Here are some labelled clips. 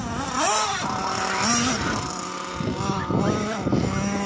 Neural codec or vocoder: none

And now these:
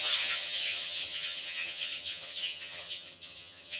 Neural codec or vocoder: vocoder, HiFi-GAN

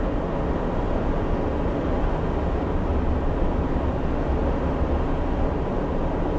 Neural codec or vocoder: none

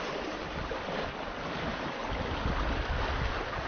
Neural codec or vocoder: none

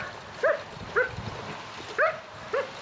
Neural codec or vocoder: none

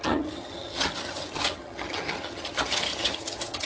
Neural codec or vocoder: vocoder, HiFi-GAN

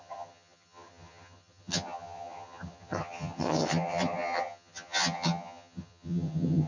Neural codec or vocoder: vocoder, HiFi-GAN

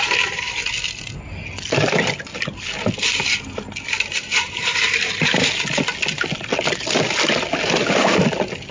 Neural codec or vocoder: none